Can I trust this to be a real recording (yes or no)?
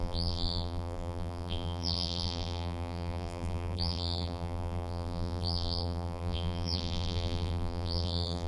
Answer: no